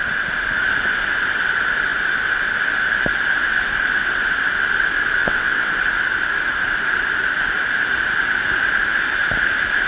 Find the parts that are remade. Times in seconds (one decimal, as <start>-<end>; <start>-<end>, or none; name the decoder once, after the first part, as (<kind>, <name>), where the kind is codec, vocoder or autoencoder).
5.2-5.7 (vocoder, WaveNeXt)